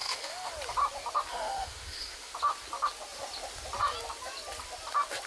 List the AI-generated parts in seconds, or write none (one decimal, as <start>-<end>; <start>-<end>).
0.0-0.5; 1.3-2.3